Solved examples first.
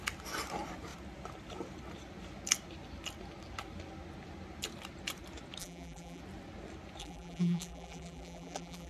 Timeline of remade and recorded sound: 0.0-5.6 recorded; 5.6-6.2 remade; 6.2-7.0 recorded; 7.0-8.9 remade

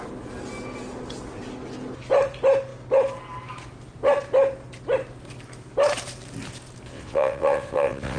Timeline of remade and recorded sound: 0.0-6.9 recorded; 6.9-8.2 remade

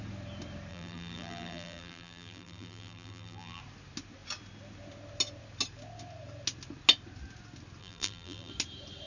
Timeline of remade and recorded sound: 0.0-0.7 recorded; 0.7-3.6 remade; 3.6-7.8 recorded; 7.8-8.5 remade; 8.5-9.1 recorded

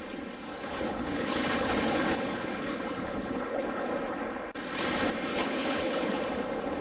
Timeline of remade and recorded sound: 0.0-0.5 recorded; 0.5-3.9 remade; 3.9-5.3 recorded; 5.3-6.2 remade; 6.2-6.8 recorded

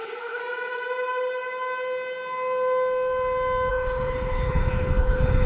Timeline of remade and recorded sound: 0.0-0.4 remade; 0.4-3.7 recorded; 3.7-5.5 remade

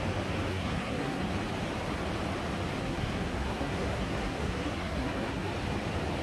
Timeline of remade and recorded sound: 0.0-0.5 recorded; 0.5-1.2 remade; 1.2-2.8 recorded; 2.8-5.5 remade; 5.5-6.2 recorded

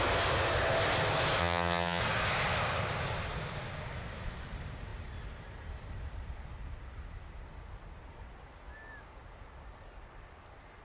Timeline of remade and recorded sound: 0.0-1.4 recorded; 1.4-2.0 remade; 2.0-10.8 recorded

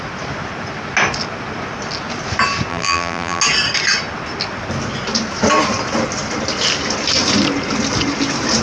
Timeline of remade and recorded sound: 0.0-2.7 recorded; 2.7-3.4 remade; 3.4-8.6 recorded